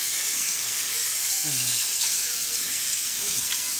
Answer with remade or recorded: remade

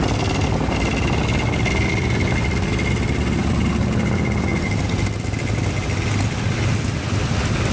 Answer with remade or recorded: recorded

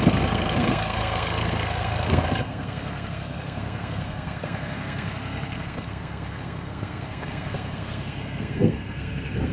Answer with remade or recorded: remade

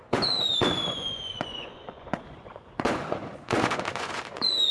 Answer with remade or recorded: remade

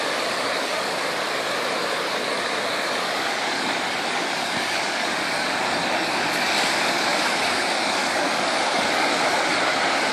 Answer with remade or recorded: remade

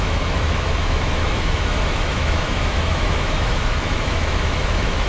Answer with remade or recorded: remade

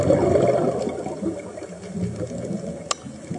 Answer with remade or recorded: recorded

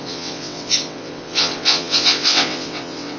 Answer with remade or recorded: remade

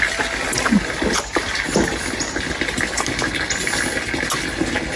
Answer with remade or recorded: recorded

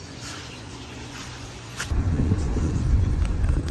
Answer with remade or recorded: remade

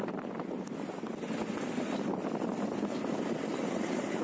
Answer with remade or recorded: recorded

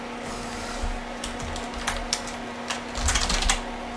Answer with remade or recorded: recorded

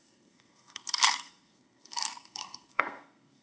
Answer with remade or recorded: remade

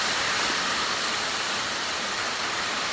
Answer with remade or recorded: remade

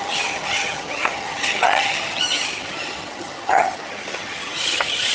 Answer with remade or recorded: remade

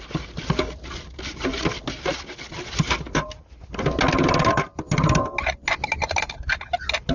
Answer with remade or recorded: recorded